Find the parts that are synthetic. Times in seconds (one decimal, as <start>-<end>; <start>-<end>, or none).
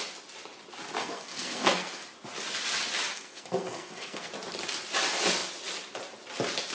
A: 1.0-2.0; 3.1-4.3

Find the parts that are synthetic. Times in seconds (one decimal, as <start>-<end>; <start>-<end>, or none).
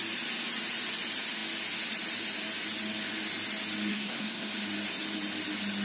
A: 3.9-4.5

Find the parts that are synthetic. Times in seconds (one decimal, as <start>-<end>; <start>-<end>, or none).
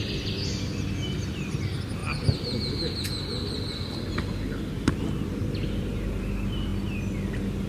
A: none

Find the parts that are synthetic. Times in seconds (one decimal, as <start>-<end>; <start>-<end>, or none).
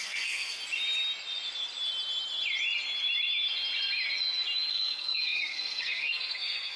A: 0.0-0.6; 4.7-6.8